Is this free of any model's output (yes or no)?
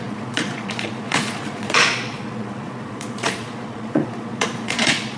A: no